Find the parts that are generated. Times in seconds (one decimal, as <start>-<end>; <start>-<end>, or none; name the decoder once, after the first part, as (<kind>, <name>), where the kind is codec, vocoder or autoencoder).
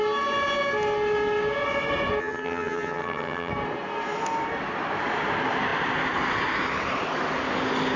2.2-3.5 (vocoder, HiFi-GAN)